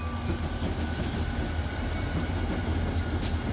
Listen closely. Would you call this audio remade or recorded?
recorded